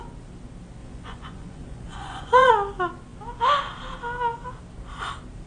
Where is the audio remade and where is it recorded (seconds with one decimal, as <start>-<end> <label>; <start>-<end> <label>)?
0.0-0.8 recorded; 0.8-2.5 remade; 2.5-5.5 recorded